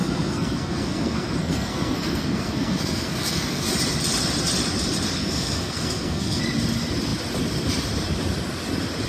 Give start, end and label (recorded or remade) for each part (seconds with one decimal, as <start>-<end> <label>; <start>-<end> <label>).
0.0-3.7 remade; 3.7-5.2 recorded; 5.2-6.4 remade; 6.4-9.1 recorded